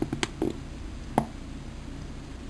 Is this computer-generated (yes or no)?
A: no